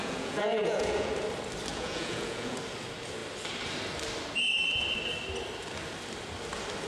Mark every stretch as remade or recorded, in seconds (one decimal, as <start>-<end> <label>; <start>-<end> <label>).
0.0-1.1 remade; 1.1-1.7 recorded; 1.7-2.6 remade; 2.6-6.9 recorded